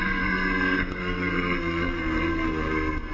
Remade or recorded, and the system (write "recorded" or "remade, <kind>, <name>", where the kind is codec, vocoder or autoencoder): remade, codec, SNAC